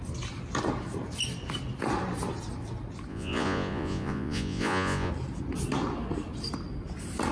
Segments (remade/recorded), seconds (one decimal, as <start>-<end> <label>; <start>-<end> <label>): 0.0-3.1 recorded; 3.1-5.1 remade; 5.1-7.3 recorded